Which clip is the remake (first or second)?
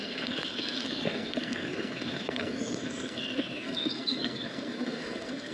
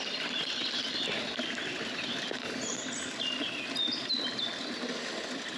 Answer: first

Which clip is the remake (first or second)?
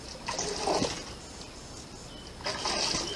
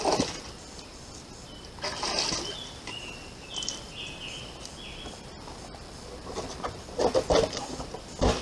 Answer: second